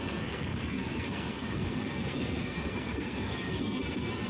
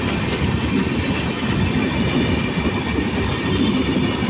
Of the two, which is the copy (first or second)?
first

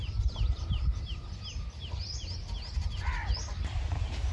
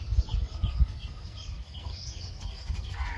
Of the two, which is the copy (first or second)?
second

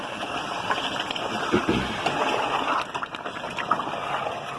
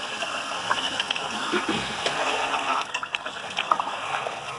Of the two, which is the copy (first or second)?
second